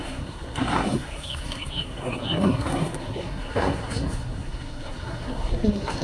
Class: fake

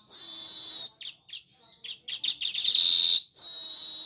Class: real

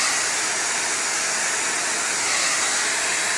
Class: real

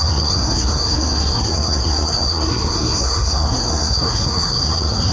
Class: fake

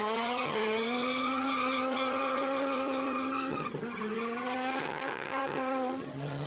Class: fake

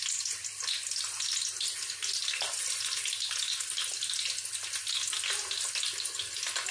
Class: real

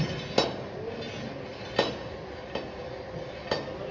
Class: real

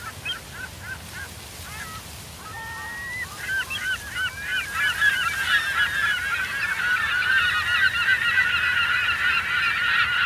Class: real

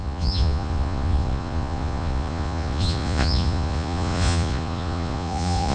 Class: fake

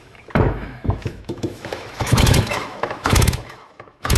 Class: fake